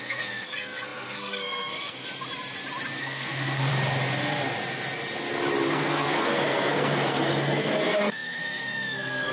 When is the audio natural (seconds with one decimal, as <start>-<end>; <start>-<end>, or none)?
2.1-3.0; 3.7-5.7